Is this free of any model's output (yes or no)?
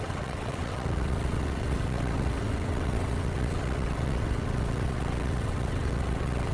no